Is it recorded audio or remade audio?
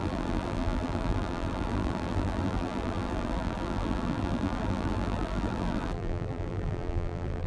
remade